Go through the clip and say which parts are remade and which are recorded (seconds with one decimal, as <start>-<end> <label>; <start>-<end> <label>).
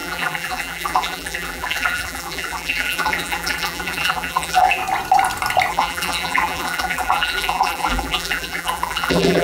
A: 0.0-4.8 remade; 4.8-5.7 recorded; 5.7-9.4 remade